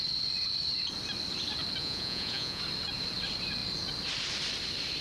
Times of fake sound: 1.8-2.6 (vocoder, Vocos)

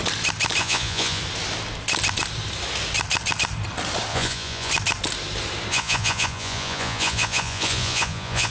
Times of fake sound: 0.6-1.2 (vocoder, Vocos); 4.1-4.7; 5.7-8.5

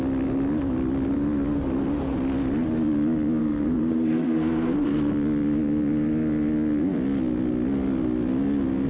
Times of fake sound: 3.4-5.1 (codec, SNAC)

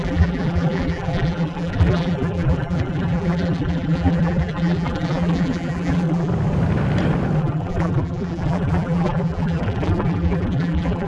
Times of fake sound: 0.0-6.3 (vocoder, BigVGAN v2); 7.4-11.1